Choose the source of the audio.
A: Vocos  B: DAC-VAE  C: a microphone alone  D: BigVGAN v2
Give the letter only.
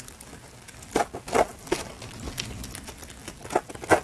C